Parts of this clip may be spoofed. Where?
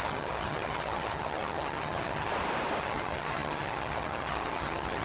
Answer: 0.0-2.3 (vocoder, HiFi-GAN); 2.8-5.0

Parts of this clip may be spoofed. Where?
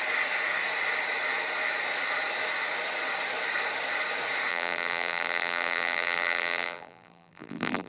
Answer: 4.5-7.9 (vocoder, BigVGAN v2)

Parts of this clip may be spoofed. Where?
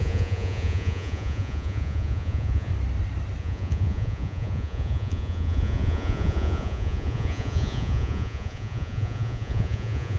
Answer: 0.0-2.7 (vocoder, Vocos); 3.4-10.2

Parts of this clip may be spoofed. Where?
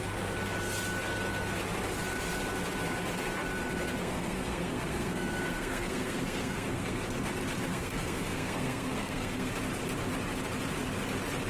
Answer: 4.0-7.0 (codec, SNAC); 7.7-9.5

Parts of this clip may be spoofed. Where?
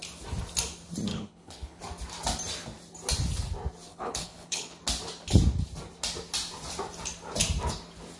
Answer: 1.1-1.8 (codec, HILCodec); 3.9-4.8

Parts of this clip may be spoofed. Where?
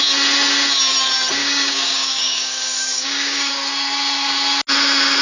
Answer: 1.4-3.5 (codec, DAC)